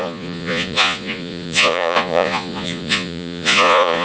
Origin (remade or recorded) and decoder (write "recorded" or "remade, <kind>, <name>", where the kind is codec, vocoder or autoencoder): remade, vocoder, Vocos